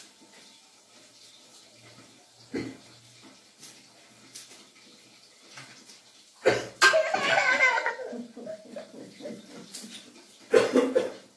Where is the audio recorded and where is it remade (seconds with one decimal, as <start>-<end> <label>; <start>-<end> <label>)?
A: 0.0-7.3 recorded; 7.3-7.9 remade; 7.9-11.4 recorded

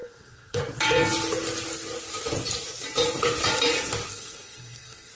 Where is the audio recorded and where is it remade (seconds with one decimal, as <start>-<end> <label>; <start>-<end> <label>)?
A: 0.0-0.6 remade; 0.6-4.1 recorded; 4.1-5.1 remade

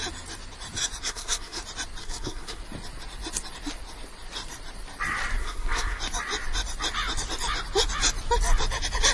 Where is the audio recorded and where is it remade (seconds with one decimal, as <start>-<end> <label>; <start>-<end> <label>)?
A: 0.0-1.0 recorded; 1.0-1.6 remade; 1.6-2.0 recorded; 2.0-2.6 remade; 2.6-5.4 recorded; 5.4-6.0 remade; 6.0-9.1 recorded